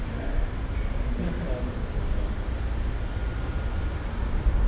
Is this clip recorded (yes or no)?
yes